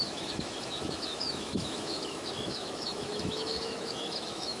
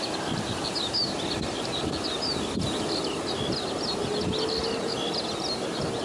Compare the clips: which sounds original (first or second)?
second